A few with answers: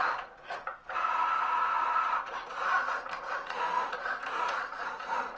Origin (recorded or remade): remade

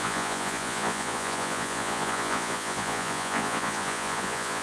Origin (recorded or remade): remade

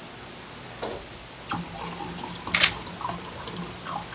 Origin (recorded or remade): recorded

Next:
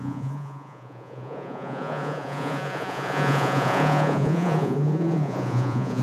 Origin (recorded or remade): remade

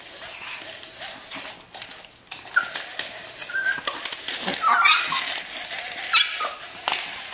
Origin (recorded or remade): recorded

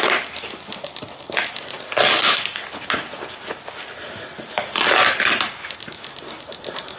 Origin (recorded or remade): recorded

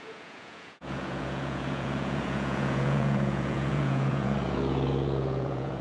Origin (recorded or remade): remade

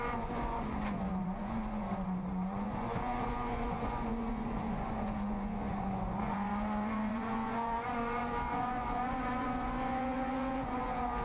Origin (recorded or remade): remade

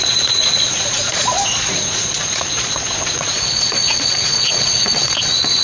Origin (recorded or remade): remade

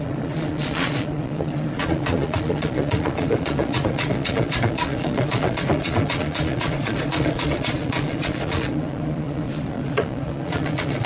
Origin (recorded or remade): remade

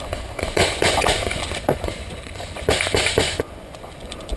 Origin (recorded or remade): remade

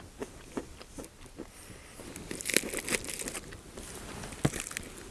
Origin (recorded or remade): recorded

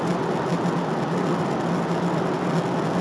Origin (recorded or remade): recorded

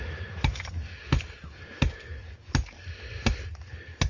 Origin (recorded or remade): recorded